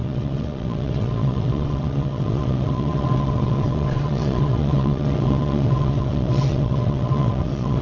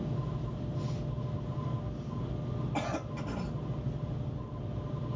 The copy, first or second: first